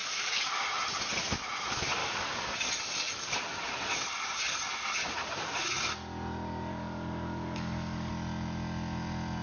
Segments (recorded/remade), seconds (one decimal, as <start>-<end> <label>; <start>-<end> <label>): 0.0-0.6 remade; 0.6-2.0 recorded; 2.0-2.7 remade; 2.7-6.7 recorded; 6.7-8.1 remade; 8.1-9.4 recorded